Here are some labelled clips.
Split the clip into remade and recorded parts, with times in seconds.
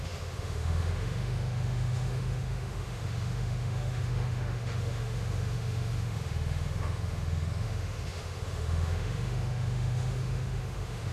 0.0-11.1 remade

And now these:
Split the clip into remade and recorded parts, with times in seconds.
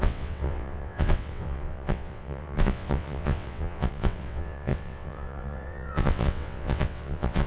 0.0-7.5 remade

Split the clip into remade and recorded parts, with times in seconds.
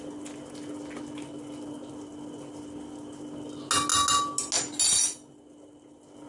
0.0-6.3 recorded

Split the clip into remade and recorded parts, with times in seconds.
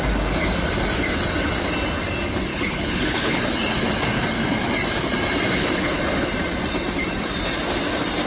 0.0-2.5 recorded; 2.5-3.4 remade; 3.4-5.5 recorded; 5.5-6.0 remade; 6.0-8.3 recorded